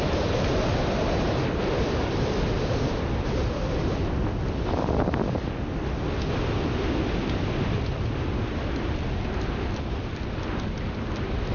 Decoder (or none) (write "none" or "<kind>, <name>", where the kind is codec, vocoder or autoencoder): none